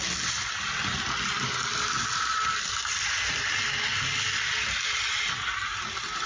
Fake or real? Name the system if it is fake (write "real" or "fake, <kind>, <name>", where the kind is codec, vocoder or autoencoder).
real